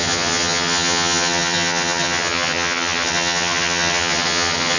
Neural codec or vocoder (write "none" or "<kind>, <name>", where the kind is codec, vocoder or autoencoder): vocoder, HiFi-GAN